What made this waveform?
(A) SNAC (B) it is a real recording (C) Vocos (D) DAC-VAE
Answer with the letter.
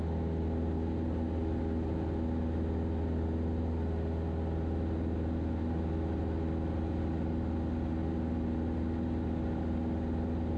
B